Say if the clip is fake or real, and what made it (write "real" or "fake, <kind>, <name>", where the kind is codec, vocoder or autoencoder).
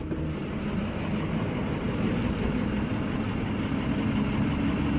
real